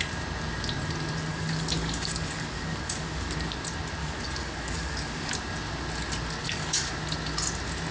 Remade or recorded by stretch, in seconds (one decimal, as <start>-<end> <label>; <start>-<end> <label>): 0.0-1.3 recorded; 1.3-3.3 remade; 3.3-4.0 recorded; 4.0-5.3 remade; 5.3-6.4 recorded; 6.4-6.9 remade; 6.9-7.9 recorded